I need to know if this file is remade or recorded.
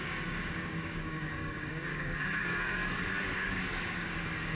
remade